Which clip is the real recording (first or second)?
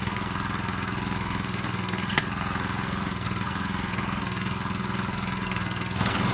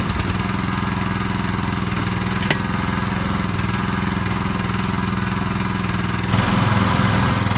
second